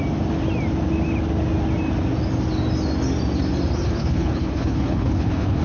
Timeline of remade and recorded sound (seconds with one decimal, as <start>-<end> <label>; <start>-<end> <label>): 0.0-4.0 recorded; 4.0-5.6 remade